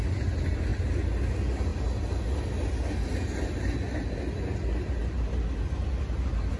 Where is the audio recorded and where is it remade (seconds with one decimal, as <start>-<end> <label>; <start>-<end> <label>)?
0.0-6.6 recorded